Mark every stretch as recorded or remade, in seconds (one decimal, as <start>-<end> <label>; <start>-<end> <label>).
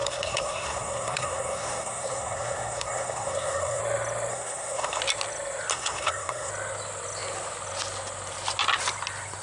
0.0-3.8 remade; 3.8-4.3 recorded; 4.3-5.0 remade; 5.0-5.7 recorded; 5.7-6.5 remade; 6.5-9.4 recorded